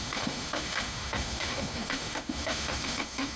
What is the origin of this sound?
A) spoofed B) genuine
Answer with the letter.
A